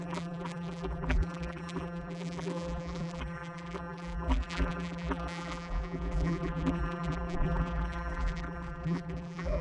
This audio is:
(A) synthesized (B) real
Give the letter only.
A